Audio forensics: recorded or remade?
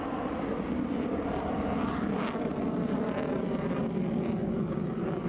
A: recorded